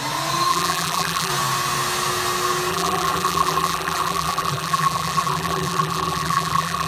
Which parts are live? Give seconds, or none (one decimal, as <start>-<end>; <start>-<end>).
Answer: 0.0-0.5; 1.3-2.7